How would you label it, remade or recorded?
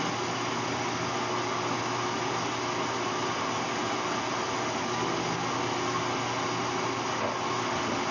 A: recorded